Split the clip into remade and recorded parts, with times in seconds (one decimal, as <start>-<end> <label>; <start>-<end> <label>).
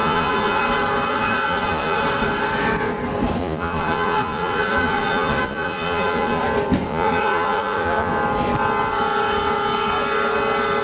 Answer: 0.0-0.6 remade; 0.6-1.1 recorded; 1.1-2.0 remade; 2.0-3.4 recorded; 3.4-6.4 remade; 6.4-6.9 recorded; 6.9-8.1 remade; 8.1-10.8 recorded